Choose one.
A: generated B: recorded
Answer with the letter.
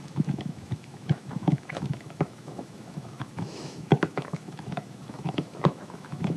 A